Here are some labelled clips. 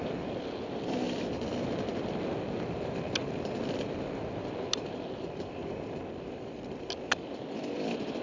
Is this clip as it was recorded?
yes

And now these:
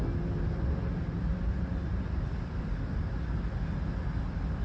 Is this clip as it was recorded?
yes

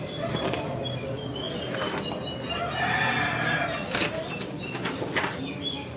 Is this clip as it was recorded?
yes